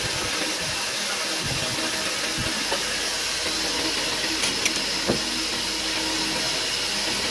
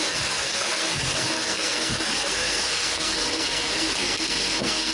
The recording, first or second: first